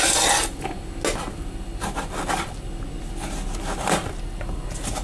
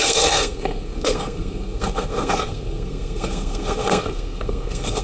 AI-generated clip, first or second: second